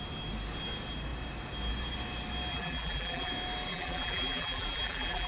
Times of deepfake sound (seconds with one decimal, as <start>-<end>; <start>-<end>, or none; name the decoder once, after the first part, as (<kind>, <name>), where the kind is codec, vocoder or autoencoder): 2.5-3.3 (vocoder, BigVGAN v2); 3.7-5.3